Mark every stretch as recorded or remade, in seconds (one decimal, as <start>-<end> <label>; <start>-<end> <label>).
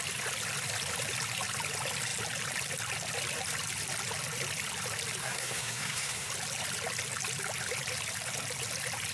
0.0-5.2 recorded; 5.2-6.3 remade; 6.3-9.1 recorded